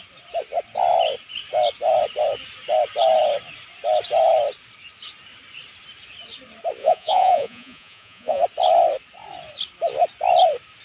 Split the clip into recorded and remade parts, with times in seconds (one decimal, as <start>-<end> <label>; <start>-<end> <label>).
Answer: 0.0-6.8 recorded; 6.8-8.4 remade; 8.4-10.8 recorded